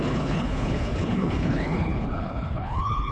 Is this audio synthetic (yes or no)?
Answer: yes